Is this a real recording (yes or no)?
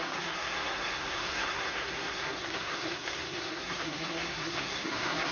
no